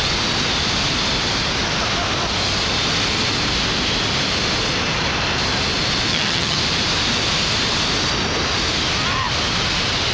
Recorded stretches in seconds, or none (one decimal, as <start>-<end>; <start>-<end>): 0.0-6.1; 6.6-10.1